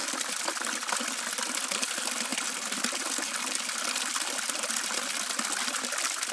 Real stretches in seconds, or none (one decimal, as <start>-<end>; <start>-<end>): 0.0-6.3